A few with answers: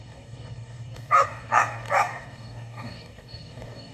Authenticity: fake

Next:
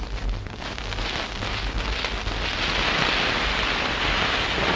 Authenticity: real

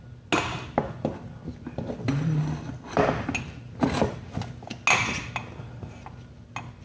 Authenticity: real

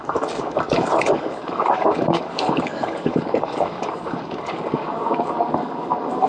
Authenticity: fake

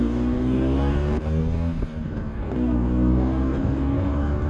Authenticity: fake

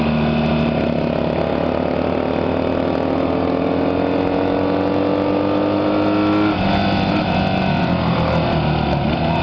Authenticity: real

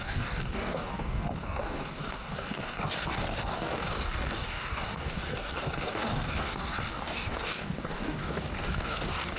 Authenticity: fake